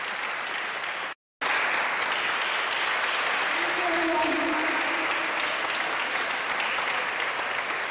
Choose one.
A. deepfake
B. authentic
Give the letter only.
B